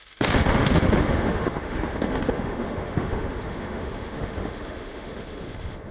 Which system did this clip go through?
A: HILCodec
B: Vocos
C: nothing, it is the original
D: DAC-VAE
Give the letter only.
D